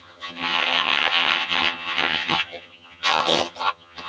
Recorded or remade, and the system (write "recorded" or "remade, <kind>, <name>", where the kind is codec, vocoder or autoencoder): remade, vocoder, HiFi-GAN